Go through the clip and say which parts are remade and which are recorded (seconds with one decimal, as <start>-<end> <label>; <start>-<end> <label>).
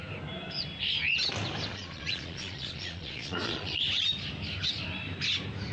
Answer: 0.0-1.7 recorded; 1.7-3.8 remade; 3.8-5.7 recorded